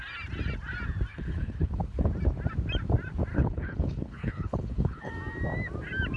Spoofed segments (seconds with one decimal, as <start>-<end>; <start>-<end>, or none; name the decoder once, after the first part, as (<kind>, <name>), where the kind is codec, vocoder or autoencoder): 1.1-2.1 (codec, HILCodec); 3.3-5.1